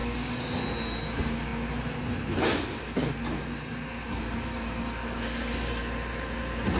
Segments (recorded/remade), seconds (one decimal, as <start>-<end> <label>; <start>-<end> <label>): 0.0-0.6 remade; 0.6-4.5 recorded; 4.5-5.8 remade; 5.8-6.8 recorded